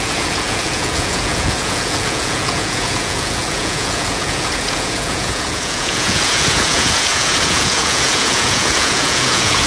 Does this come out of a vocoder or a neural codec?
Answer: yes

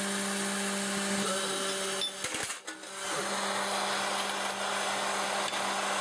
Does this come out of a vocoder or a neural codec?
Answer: no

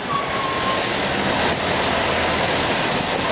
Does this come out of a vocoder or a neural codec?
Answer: no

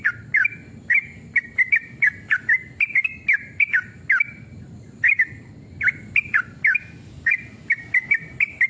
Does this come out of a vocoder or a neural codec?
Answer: no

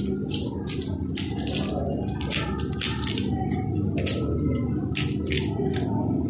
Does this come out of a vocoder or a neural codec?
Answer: no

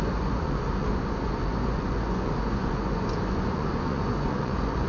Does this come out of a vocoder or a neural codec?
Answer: yes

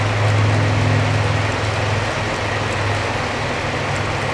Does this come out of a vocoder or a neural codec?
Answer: no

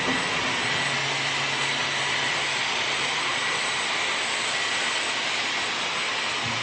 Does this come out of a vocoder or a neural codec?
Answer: no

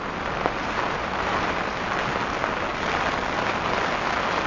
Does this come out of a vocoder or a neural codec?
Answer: no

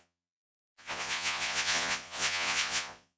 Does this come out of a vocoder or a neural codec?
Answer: yes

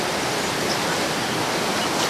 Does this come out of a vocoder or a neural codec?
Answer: no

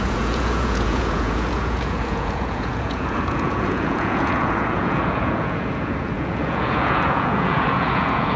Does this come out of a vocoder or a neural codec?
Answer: yes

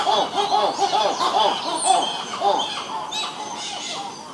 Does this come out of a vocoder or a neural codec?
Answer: no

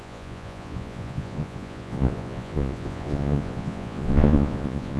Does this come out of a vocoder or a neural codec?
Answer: yes